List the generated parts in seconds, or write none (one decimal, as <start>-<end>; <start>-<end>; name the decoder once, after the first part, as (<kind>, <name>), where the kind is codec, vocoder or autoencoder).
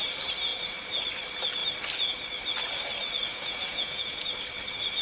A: 3.3-4.3 (vocoder, Vocos)